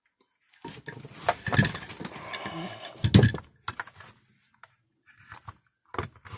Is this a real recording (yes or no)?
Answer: yes